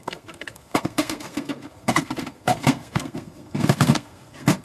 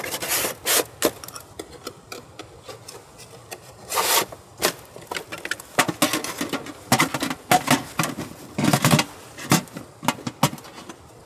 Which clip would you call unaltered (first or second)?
second